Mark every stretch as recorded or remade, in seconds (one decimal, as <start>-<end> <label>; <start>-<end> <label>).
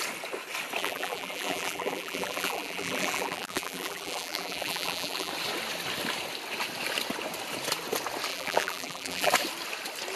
0.0-0.8 recorded; 0.8-5.3 remade; 5.3-8.3 recorded; 8.3-9.3 remade; 9.3-10.2 recorded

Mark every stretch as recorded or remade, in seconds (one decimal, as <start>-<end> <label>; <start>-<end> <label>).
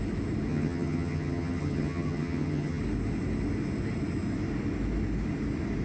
0.0-0.5 recorded; 0.5-2.8 remade; 2.8-5.8 recorded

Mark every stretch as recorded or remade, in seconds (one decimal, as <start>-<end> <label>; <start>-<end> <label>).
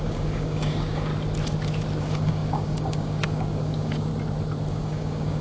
0.0-1.1 remade; 1.1-2.0 recorded; 2.0-4.1 remade; 4.1-4.7 recorded; 4.7-5.4 remade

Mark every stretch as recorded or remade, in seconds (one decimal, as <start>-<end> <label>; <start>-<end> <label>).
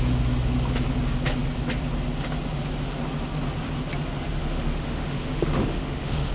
0.0-4.4 recorded; 4.4-6.3 remade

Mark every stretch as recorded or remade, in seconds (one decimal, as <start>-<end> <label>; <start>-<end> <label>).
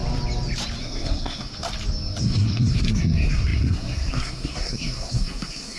0.0-0.8 recorded; 0.8-1.5 remade; 1.5-2.2 recorded; 2.2-5.8 remade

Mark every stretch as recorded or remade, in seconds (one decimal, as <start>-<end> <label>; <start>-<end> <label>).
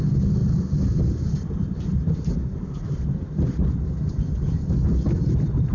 0.0-5.7 recorded